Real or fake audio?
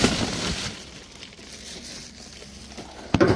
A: real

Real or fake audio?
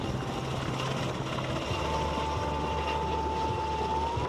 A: real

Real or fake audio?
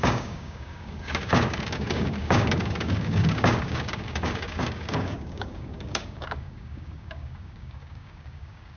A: fake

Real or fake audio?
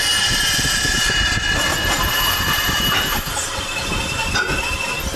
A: real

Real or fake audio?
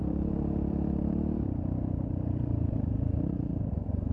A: real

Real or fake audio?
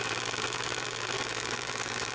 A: fake